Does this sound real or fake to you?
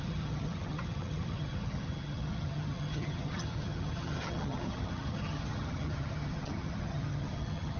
fake